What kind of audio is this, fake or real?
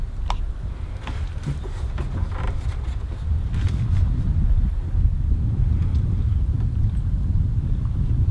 real